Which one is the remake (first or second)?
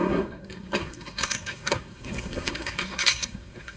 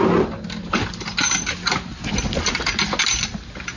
first